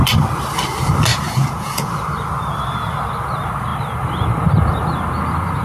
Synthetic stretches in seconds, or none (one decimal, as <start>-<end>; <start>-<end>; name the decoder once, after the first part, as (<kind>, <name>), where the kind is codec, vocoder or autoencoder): 1.1-1.9 (vocoder, Vocos)